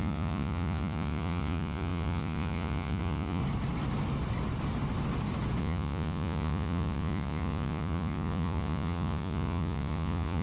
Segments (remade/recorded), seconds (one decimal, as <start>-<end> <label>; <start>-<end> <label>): 0.0-3.4 remade; 3.4-5.6 recorded; 5.6-10.4 remade